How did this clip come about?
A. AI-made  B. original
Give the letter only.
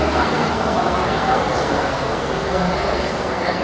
A